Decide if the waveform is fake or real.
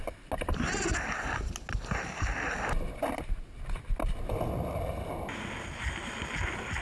real